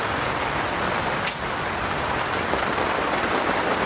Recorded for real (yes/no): yes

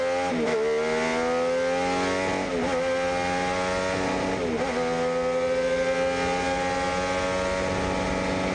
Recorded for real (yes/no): yes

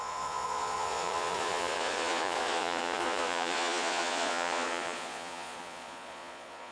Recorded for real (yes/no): no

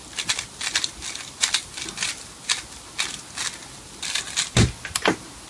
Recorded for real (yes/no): yes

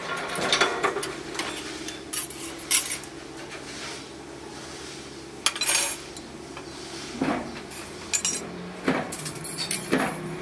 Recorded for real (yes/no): yes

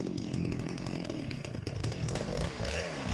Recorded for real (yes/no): no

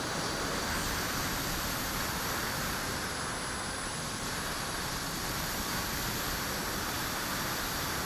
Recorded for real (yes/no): yes